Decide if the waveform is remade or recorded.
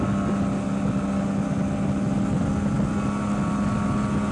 recorded